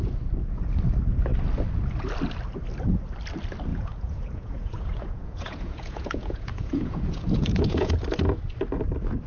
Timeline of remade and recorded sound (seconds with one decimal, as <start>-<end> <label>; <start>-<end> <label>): 0.0-3.7 recorded; 3.7-7.9 remade; 7.9-9.3 recorded